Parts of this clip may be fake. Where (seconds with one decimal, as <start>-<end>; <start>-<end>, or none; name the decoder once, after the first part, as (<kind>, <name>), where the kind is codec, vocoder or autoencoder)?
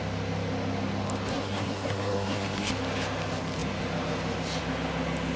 1.3-2.7 (codec, SNAC)